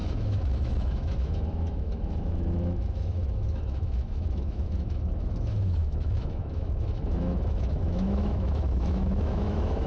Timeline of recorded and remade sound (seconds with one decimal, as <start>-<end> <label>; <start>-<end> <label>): 0.0-9.9 remade